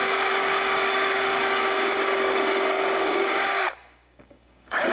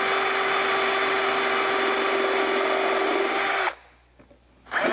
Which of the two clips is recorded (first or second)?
second